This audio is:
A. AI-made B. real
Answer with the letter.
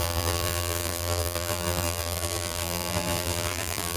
A